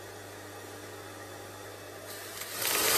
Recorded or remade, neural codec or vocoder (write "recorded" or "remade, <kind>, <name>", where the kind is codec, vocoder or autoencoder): recorded